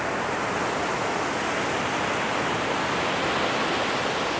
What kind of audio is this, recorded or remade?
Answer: recorded